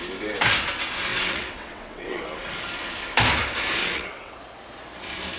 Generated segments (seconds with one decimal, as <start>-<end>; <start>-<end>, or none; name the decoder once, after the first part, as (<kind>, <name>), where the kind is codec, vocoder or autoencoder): 1.1-2.2 (vocoder, WaveNeXt); 3.8-4.3